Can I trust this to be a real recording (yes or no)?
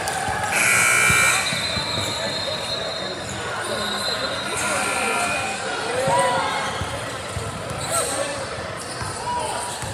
yes